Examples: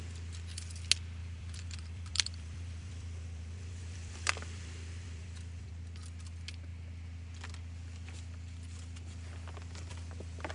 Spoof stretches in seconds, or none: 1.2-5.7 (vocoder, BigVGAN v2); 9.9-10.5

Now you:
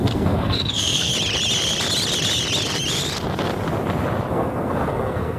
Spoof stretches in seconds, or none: 0.0-1.1 (codec, SNAC); 4.3-5.4

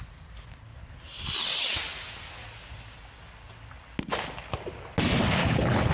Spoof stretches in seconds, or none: 5.4-5.9 (codec, HILCodec)

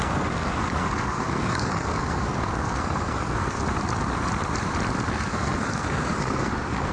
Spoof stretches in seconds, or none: 0.0-3.6 (codec, SNAC); 5.1-6.9

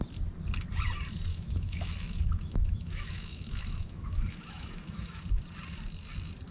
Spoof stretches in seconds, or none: 1.3-5.2 (autoencoder, DAC-VAE)